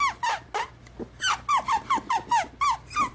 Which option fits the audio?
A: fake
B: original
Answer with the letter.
B